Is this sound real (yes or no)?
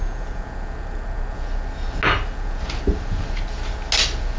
yes